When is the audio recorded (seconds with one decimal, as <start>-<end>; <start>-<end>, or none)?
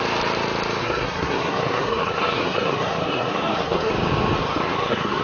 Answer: 0.0-0.8; 3.9-4.4